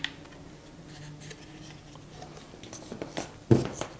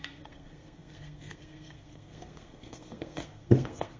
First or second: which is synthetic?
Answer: second